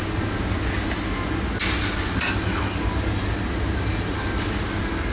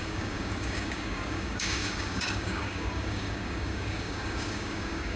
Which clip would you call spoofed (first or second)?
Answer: second